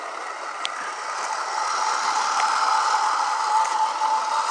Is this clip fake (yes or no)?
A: no